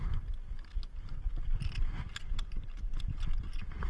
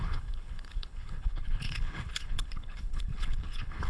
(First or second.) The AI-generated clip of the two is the second